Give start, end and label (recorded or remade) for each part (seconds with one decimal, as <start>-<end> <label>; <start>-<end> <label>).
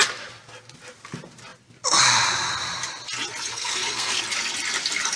0.0-3.5 recorded; 3.5-4.2 remade; 4.2-5.2 recorded